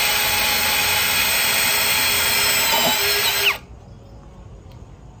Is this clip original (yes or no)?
yes